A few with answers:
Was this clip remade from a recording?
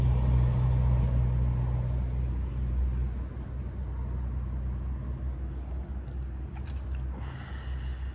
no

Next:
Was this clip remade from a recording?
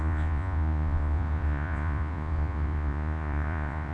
yes